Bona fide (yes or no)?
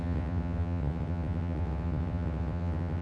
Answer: no